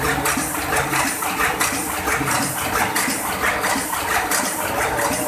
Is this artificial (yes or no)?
no